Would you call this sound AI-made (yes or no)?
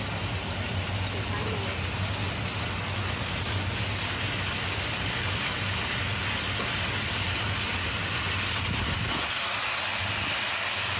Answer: no